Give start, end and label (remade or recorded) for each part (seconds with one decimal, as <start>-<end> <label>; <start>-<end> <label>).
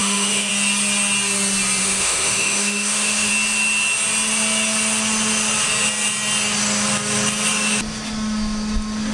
0.0-0.5 remade; 0.5-1.8 recorded; 1.8-3.3 remade; 3.3-9.1 recorded